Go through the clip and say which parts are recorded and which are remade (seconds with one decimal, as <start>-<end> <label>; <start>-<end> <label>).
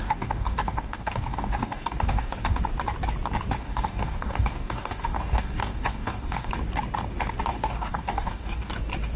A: 0.0-2.6 remade; 2.6-3.6 recorded; 3.6-6.5 remade; 6.5-7.5 recorded; 7.5-8.7 remade; 8.7-9.2 recorded